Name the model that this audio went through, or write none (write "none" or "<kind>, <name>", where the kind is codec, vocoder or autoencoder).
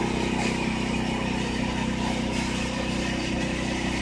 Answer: none